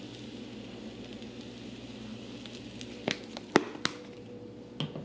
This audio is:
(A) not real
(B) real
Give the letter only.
B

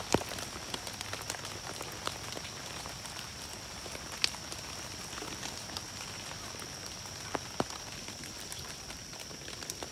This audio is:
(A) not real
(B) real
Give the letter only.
B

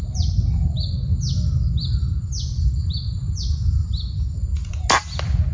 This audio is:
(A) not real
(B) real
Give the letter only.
B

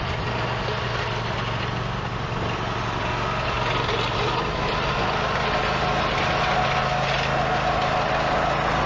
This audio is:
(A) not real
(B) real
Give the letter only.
B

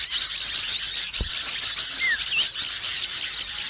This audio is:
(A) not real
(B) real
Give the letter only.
B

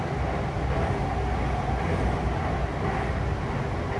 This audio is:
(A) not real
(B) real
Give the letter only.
B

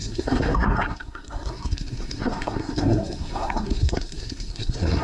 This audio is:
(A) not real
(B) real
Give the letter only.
A